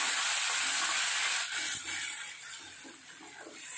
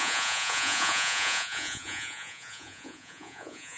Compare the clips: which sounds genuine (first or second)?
first